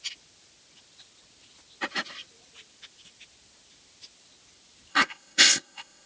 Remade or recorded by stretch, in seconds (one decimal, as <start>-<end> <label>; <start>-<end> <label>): 0.0-4.9 recorded; 4.9-6.1 remade

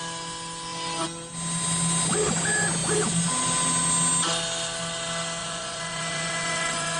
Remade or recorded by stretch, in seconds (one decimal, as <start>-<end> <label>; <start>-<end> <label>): 0.0-5.4 recorded; 5.4-7.0 remade

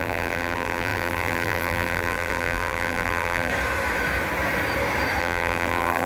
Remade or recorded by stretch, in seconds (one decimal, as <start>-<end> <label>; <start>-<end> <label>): 0.0-3.5 remade; 3.5-5.2 recorded; 5.2-6.1 remade

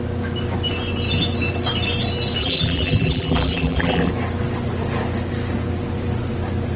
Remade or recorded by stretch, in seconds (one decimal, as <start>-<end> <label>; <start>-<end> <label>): 0.0-2.4 recorded; 2.4-4.1 remade; 4.1-6.8 recorded